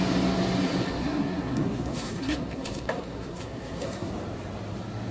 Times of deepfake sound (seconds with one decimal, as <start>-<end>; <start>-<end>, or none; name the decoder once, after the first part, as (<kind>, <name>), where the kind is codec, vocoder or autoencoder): 1.0-4.1 (codec, SNAC)